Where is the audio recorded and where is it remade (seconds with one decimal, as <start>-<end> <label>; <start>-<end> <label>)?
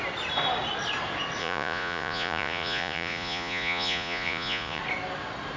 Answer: 0.0-1.4 recorded; 1.4-4.8 remade; 4.8-5.6 recorded